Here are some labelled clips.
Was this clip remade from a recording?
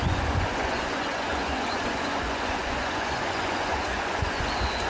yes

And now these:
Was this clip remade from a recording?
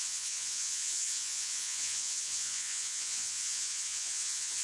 yes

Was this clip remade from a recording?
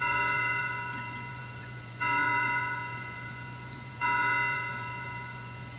yes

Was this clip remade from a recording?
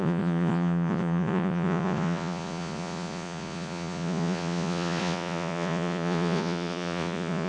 yes